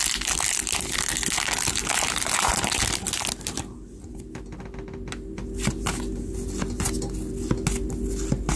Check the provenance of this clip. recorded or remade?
recorded